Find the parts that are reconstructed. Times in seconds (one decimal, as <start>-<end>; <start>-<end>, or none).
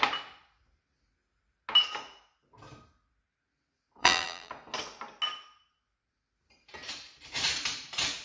4.0-4.5